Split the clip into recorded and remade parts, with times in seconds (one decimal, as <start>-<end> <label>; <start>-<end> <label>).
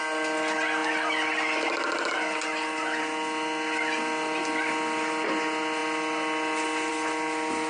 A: 0.0-7.7 recorded